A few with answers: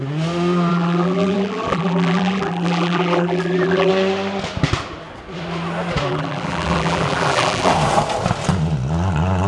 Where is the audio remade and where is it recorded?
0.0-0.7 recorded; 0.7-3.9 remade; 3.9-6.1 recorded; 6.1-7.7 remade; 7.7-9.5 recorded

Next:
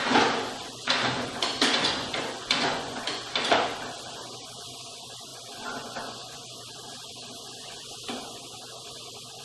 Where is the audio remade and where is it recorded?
0.0-3.3 remade; 3.3-4.1 recorded; 4.1-9.4 remade

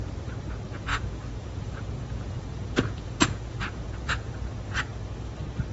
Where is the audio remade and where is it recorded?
0.0-0.9 recorded; 0.9-4.3 remade; 4.3-5.7 recorded

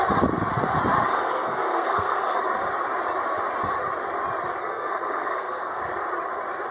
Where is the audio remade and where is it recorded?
0.0-1.1 recorded; 1.1-2.4 remade; 2.4-4.6 recorded; 4.6-5.8 remade; 5.8-6.7 recorded

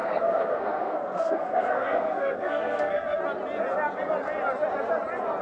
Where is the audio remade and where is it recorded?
0.0-3.2 remade; 3.2-5.4 recorded

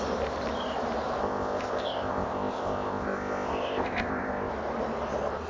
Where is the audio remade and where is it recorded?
0.0-1.2 recorded; 1.2-4.5 remade; 4.5-5.5 recorded

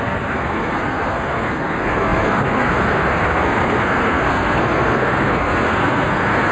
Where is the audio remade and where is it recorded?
0.0-6.5 remade